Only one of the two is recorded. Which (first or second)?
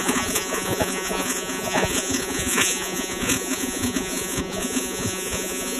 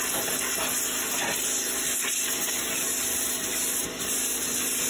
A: second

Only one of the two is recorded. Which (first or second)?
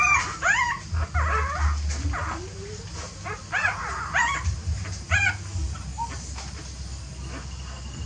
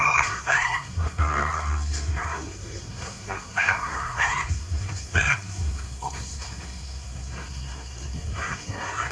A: first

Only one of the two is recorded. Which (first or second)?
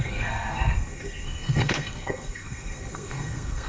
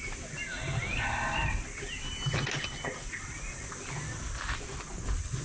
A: second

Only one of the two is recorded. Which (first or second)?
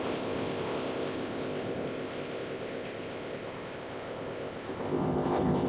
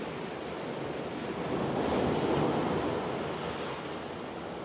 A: second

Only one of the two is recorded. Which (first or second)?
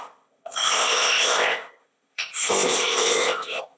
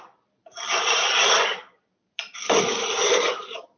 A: second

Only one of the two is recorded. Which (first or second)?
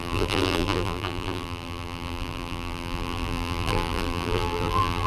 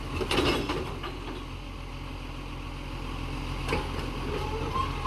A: second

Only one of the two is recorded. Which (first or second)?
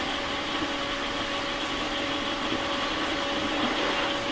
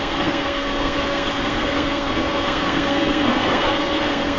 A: first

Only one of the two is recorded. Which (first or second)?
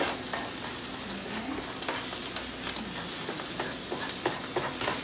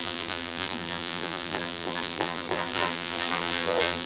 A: first